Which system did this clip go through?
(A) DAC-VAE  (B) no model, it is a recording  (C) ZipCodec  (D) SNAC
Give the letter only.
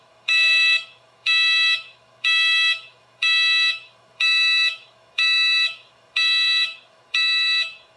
A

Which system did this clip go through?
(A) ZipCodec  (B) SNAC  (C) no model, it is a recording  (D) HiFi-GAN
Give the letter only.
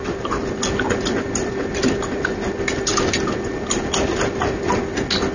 C